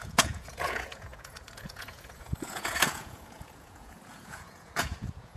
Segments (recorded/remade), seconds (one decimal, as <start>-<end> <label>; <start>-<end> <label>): 0.0-5.4 remade